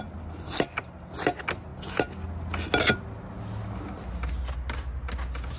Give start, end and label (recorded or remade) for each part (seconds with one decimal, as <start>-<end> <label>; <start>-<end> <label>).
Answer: 0.0-5.6 recorded